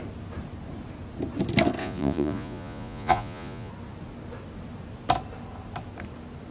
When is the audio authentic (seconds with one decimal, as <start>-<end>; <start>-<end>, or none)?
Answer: 0.0-1.8; 3.7-6.5